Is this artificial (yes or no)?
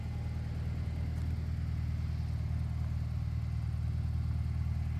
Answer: no